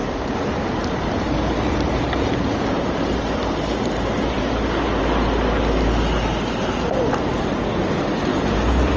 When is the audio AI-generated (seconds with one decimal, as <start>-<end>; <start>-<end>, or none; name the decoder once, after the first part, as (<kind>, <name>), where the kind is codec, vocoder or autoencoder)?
0.0-5.0 (vocoder, BigVGAN v2); 8.3-9.0